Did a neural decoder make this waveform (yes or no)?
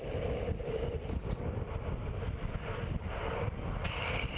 no